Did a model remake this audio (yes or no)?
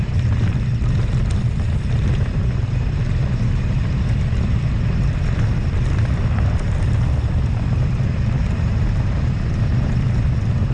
no